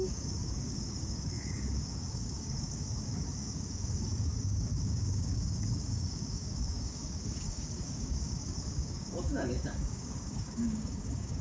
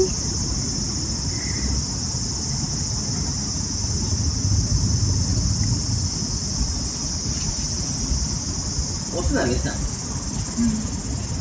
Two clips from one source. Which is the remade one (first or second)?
first